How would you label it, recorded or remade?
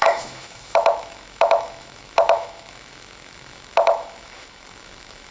remade